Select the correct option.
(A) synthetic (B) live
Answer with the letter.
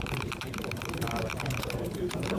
A